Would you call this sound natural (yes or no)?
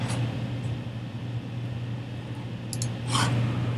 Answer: yes